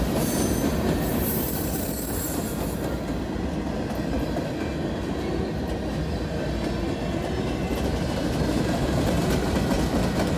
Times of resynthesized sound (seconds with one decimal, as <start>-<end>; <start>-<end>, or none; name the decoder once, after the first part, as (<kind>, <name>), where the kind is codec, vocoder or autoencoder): 1.1-1.8 (vocoder, BigVGAN v2); 8.5-9.6